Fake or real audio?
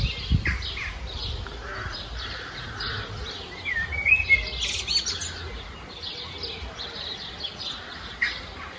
real